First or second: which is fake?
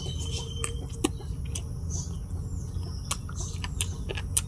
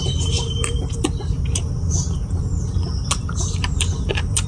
second